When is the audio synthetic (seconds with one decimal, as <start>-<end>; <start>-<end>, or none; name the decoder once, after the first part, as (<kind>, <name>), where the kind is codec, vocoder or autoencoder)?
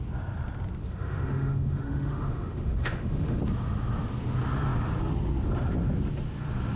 0.8-3.4 (autoencoder, DAC-VAE)